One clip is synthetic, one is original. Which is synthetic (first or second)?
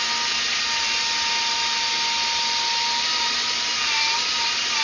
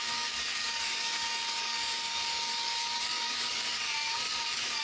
second